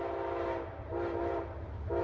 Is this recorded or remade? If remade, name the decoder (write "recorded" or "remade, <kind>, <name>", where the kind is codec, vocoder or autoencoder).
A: recorded